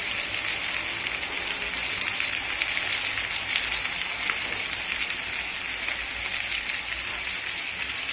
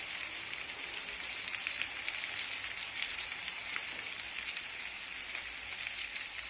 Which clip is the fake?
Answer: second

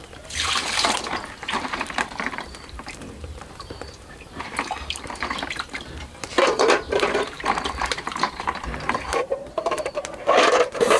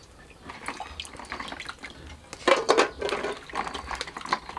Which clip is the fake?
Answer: first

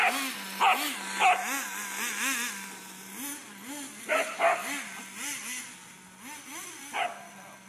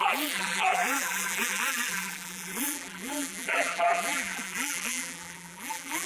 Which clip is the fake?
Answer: second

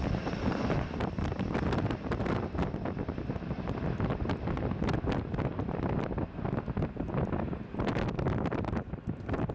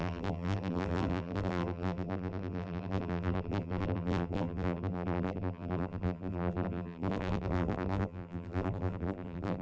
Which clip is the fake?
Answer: second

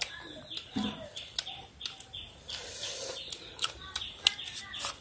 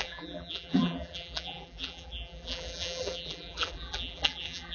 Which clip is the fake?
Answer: second